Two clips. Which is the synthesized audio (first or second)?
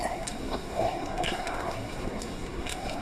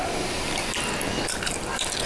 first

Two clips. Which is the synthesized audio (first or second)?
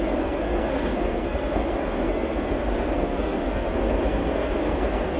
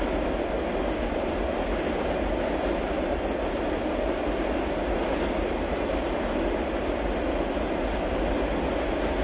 first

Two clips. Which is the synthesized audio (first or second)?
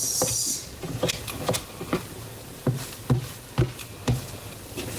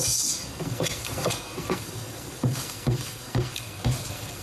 second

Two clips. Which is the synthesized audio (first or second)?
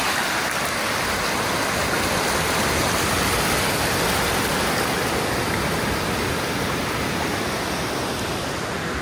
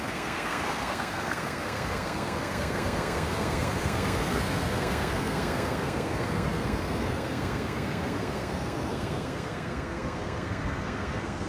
second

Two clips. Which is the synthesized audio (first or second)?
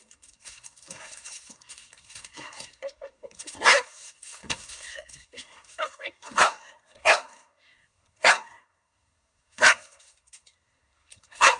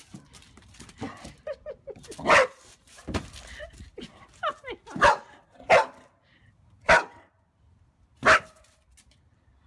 first